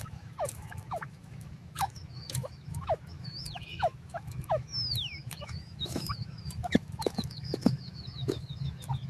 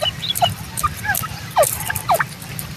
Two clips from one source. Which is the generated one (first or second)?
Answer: first